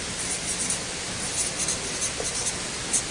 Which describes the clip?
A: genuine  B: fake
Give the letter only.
A